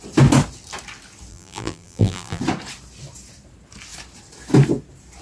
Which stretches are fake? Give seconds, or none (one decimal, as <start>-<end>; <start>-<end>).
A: 1.3-2.4